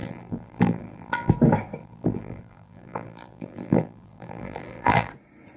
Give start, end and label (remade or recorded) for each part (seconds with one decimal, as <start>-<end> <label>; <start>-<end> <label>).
0.0-1.3 remade; 1.3-1.8 recorded; 1.8-5.1 remade; 5.1-5.6 recorded